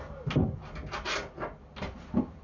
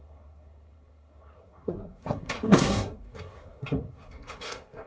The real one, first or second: first